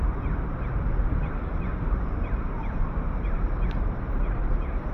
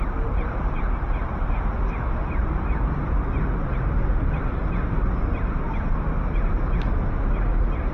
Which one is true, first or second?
second